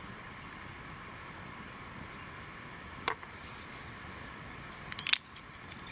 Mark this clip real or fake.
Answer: real